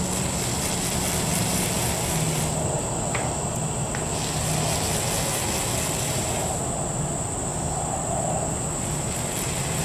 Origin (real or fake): real